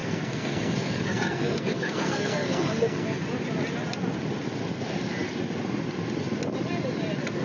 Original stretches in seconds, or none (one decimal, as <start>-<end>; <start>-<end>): 3.2-7.4